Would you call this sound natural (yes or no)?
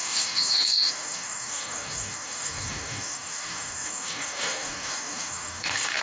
no